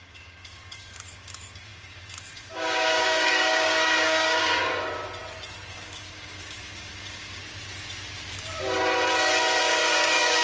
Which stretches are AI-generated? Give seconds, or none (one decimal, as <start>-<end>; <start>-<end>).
0.0-4.7; 5.7-7.4; 9.6-10.4